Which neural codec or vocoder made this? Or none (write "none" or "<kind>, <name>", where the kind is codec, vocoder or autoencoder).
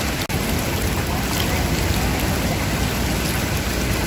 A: none